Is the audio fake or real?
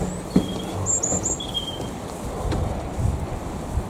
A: real